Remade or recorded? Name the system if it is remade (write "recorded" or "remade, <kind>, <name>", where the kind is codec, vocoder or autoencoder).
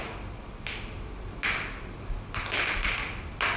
recorded